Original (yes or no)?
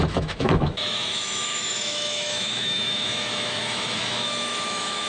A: no